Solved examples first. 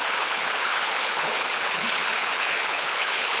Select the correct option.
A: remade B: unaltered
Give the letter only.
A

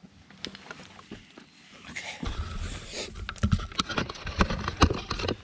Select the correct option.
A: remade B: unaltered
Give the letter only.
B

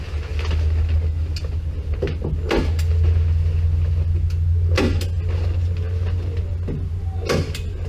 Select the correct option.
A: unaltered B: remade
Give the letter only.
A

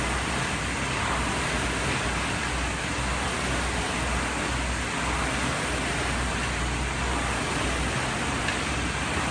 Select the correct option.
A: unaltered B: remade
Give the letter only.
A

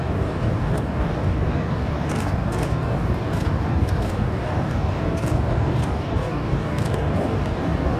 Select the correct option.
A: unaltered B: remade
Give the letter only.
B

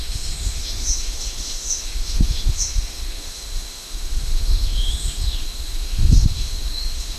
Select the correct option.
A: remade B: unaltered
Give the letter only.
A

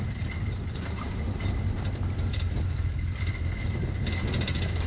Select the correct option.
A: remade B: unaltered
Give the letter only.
B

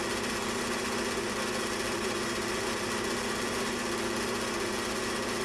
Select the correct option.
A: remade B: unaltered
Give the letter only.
B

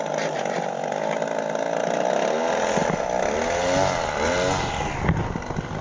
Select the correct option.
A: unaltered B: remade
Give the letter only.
A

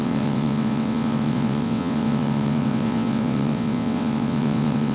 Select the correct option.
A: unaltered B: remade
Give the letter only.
B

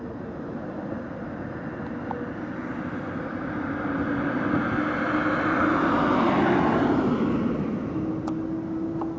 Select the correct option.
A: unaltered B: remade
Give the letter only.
A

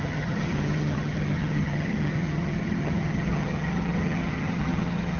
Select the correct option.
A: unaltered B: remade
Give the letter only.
B